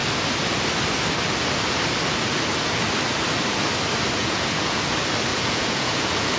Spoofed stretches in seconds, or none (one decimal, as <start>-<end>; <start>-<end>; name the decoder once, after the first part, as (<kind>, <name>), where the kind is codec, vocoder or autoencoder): 4.2-4.8 (vocoder, Vocos); 5.3-6.4